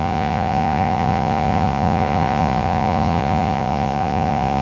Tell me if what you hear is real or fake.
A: fake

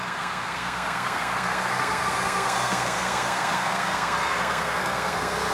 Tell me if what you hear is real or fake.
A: fake